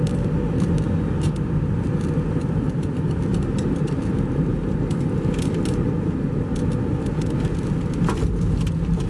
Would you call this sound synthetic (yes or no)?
no